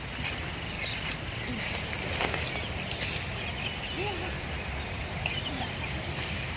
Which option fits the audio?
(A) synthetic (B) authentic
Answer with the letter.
B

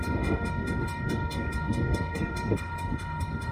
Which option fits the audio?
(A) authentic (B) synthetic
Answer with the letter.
B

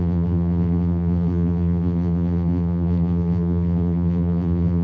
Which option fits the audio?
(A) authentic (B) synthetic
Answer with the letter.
B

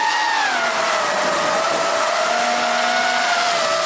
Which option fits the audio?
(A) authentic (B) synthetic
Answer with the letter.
A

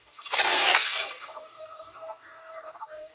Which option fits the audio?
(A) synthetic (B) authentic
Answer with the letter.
A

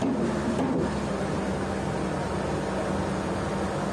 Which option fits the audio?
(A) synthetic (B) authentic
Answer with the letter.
B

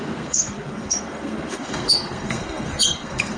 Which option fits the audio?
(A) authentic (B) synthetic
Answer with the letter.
B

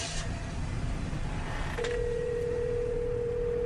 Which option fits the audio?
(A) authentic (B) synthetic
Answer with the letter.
B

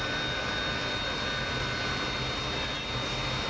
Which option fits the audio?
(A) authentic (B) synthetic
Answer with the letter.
A